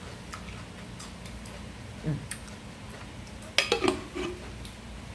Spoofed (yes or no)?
no